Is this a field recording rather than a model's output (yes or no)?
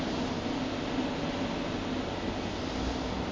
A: yes